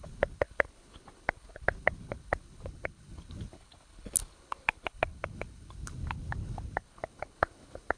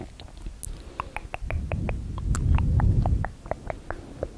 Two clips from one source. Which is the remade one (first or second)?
first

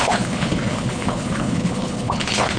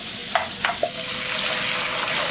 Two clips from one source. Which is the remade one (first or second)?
first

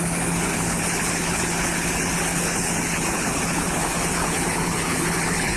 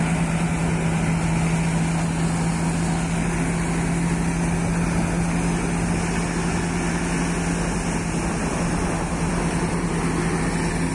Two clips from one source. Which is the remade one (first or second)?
first